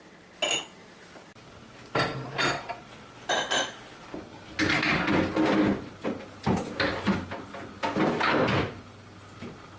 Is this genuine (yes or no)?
yes